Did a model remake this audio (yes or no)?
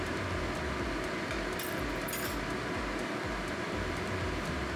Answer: no